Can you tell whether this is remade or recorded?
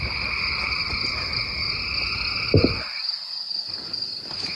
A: recorded